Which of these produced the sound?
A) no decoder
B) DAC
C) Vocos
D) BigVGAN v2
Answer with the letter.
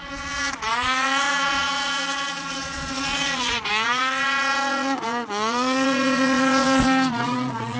C